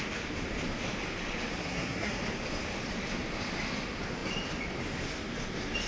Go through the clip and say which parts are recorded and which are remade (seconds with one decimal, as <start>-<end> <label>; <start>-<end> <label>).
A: 0.0-1.6 recorded; 1.6-2.2 remade; 2.2-5.9 recorded